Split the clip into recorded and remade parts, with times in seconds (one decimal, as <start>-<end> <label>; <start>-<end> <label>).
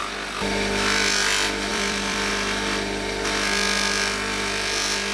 0.0-1.7 recorded; 1.7-2.3 remade; 2.3-5.1 recorded